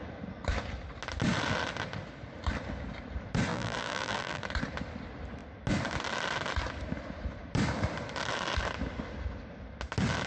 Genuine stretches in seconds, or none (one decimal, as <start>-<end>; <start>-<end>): 0.0-3.5; 4.4-10.3